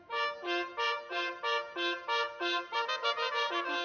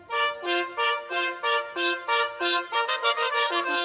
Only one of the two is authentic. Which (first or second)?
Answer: first